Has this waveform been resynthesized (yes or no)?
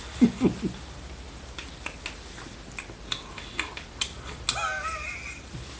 no